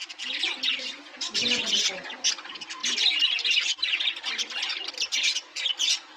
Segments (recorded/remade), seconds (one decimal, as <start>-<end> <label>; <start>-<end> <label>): 0.0-6.2 recorded